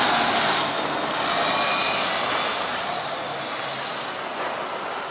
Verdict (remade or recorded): recorded